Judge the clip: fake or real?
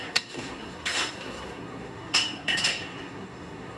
fake